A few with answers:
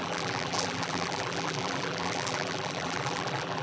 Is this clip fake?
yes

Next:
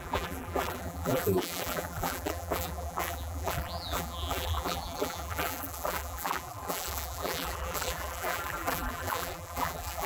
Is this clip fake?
yes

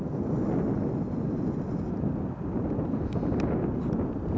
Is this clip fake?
no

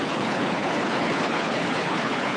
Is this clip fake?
yes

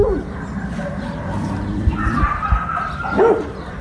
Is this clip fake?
yes